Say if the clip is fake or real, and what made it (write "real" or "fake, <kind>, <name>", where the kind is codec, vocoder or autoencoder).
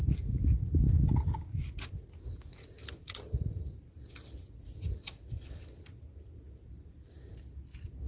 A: real